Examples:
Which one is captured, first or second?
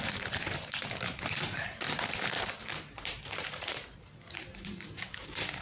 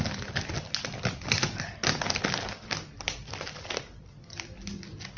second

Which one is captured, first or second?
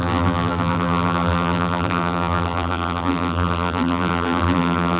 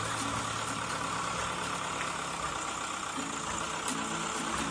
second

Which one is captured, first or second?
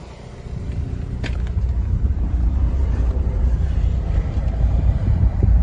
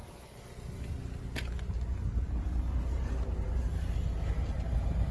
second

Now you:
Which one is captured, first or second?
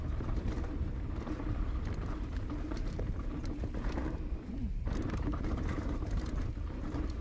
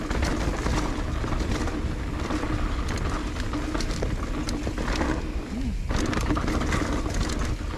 second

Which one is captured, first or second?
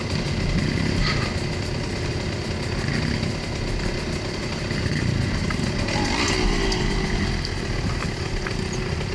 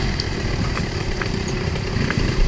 first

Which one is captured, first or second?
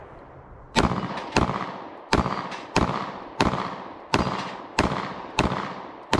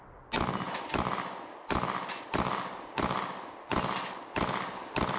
second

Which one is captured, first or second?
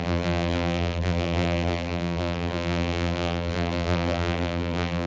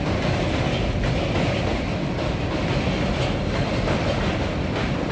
second